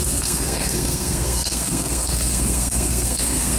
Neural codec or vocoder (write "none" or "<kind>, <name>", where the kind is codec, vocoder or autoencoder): codec, SNAC